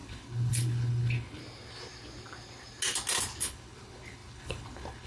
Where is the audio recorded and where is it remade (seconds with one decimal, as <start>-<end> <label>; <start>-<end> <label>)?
0.0-1.4 remade; 1.4-3.4 recorded; 3.4-5.1 remade